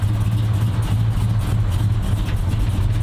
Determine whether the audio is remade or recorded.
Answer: recorded